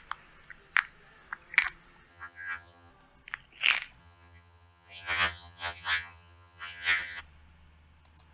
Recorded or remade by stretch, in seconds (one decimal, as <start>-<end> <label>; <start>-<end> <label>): 0.0-2.1 recorded; 2.1-2.9 remade; 2.9-4.0 recorded; 4.0-7.2 remade; 7.2-8.3 recorded